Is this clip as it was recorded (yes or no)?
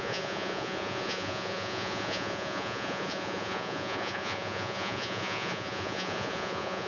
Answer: no